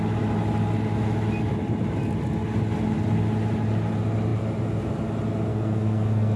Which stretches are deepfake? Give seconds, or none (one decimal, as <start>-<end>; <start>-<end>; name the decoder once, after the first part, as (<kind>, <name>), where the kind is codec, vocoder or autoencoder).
5.5-6.4 (codec, SNAC)